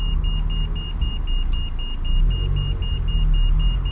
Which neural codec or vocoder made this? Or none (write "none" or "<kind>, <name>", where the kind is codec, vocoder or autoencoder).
none